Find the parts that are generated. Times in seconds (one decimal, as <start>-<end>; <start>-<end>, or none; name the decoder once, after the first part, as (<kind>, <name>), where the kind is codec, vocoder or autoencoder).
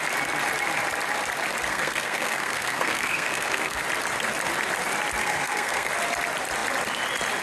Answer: 1.7-3.8 (codec, SNAC); 5.2-5.9